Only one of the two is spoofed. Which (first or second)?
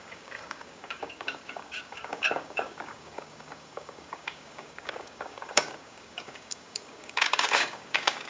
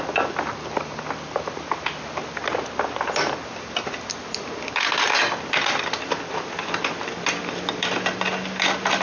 first